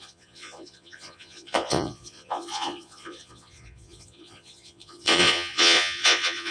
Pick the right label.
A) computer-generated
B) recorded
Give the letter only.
A